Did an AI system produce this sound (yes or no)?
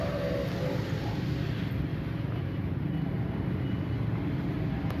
no